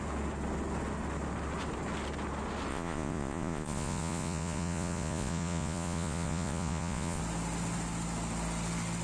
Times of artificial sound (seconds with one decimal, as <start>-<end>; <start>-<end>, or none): 2.7-7.2